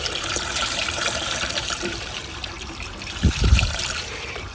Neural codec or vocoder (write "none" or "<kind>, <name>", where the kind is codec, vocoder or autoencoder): vocoder, BigVGAN v2